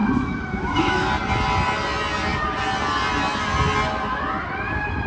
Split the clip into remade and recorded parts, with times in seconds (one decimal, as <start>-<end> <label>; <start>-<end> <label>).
0.0-1.1 remade; 1.1-5.1 recorded